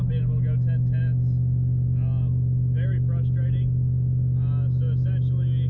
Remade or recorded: recorded